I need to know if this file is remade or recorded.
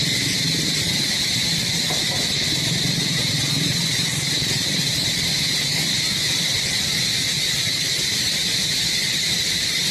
recorded